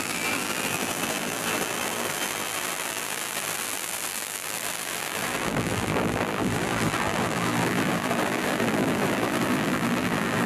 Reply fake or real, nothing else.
fake